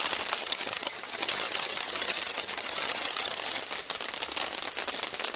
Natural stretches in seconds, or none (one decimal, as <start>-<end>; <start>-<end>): 0.0-0.4; 3.6-5.4